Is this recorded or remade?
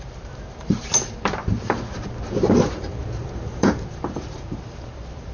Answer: remade